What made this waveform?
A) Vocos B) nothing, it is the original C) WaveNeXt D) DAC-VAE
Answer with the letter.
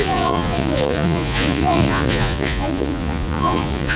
A